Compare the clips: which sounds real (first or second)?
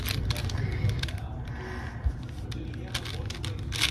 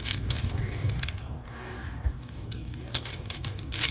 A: first